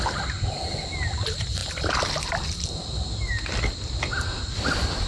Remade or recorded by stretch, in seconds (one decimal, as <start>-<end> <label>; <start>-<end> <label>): 0.0-5.1 recorded